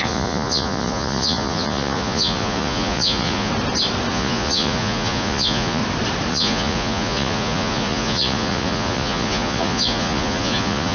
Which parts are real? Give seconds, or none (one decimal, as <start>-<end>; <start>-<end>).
3.5-4.1; 5.8-6.3